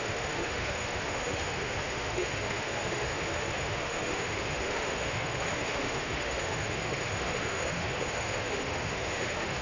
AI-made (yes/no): yes